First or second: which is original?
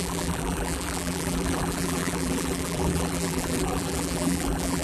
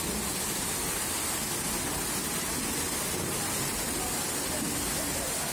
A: second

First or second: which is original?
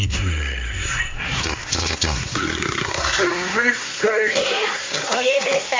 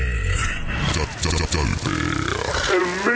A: second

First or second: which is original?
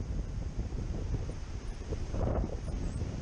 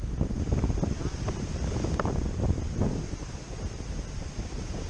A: second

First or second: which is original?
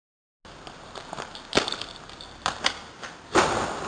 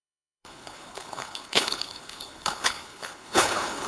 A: first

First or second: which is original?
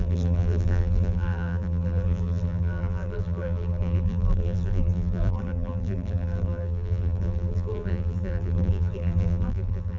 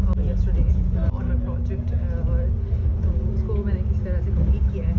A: second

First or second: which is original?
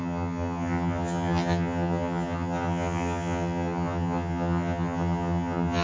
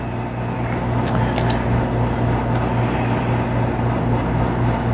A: second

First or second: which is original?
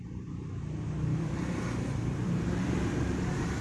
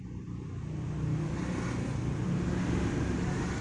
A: second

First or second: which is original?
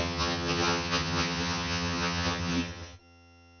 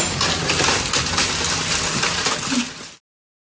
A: second